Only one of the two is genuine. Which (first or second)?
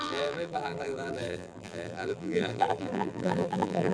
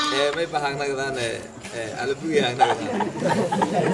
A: second